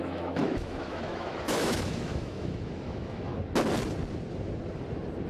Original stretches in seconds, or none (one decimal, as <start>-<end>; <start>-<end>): 3.3-5.3

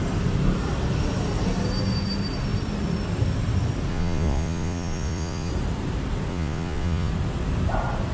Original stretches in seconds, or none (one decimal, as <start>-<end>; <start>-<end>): 0.0-3.9; 5.5-6.3; 7.1-8.1

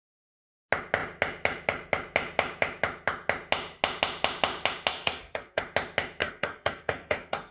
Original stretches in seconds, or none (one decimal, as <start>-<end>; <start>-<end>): 0.0-4.9; 5.6-6.2

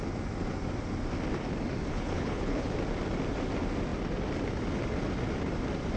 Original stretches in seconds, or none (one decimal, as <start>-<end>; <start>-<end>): 0.0-1.9; 2.7-6.0